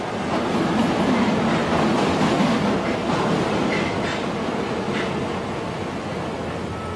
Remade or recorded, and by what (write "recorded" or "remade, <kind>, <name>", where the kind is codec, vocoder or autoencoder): recorded